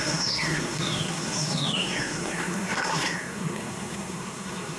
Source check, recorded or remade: remade